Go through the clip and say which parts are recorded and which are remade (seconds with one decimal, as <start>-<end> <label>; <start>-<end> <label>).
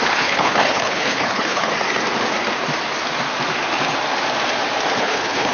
0.0-1.7 remade; 1.7-5.0 recorded; 5.0-5.5 remade